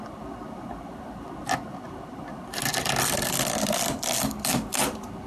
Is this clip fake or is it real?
real